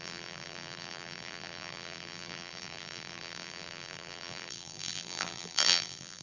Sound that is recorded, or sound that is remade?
remade